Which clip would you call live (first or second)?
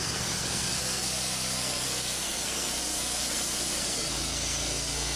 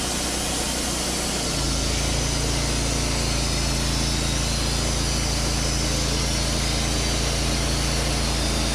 second